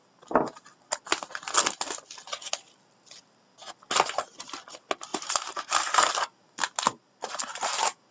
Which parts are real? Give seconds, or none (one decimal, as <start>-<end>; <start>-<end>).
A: 0.0-5.1